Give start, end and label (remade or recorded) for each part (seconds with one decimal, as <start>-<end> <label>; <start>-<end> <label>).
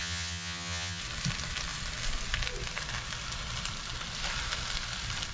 0.0-1.0 remade; 1.0-5.3 recorded